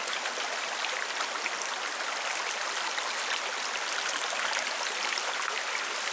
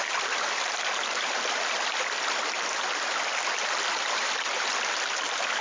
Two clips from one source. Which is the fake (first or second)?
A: second